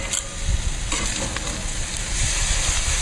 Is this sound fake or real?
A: real